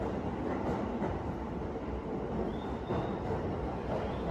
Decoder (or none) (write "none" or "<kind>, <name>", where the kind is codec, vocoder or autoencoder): vocoder, BigVGAN v2